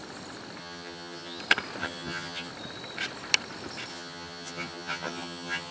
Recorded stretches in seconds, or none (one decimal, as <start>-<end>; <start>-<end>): 0.0-0.6; 1.4-1.8; 2.5-3.9